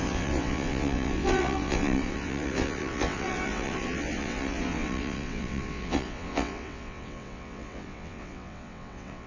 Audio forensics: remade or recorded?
remade